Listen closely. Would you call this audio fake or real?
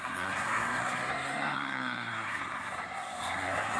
fake